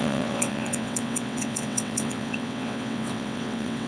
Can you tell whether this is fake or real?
fake